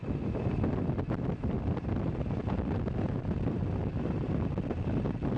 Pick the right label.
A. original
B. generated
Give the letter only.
A